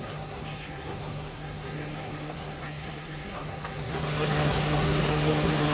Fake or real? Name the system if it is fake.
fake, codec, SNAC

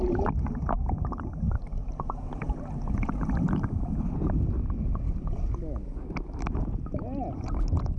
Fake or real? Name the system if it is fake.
real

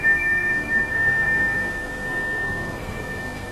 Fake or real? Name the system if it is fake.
fake, codec, SNAC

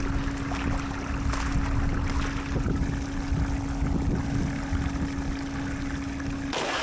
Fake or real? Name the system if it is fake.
real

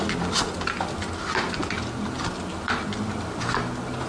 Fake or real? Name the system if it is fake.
real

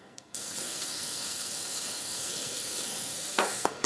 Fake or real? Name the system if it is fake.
fake, codec, SNAC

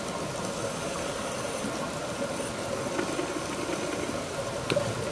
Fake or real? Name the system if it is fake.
real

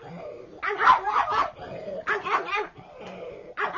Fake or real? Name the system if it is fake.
real